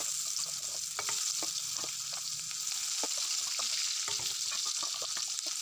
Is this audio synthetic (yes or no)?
no